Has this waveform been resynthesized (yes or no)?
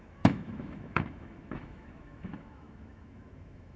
yes